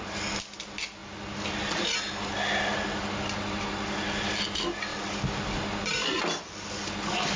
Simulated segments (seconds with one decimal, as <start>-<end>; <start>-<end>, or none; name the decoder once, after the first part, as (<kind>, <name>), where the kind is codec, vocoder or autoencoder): 4.9-6.5 (vocoder, BigVGAN v2)